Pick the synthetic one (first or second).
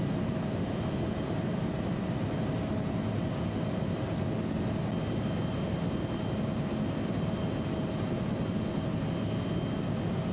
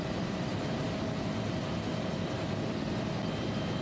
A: second